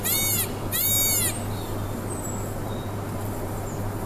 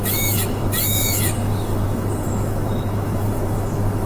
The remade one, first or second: second